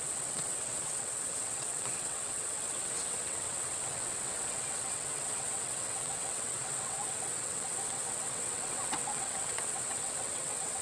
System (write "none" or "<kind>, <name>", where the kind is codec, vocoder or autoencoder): vocoder, WaveNeXt